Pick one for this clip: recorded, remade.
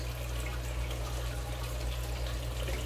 recorded